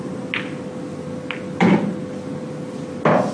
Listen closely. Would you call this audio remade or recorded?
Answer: recorded